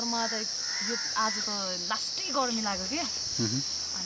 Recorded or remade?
recorded